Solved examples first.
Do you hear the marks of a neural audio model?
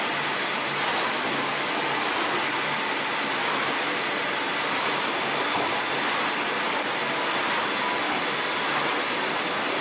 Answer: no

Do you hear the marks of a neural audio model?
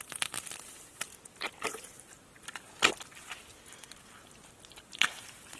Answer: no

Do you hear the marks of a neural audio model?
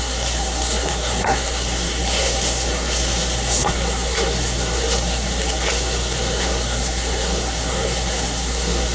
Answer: yes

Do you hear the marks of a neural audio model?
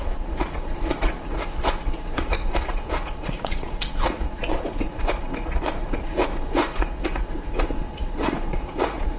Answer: yes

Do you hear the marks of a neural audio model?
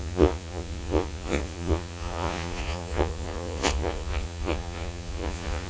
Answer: yes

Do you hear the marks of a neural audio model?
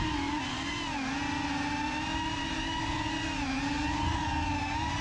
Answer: no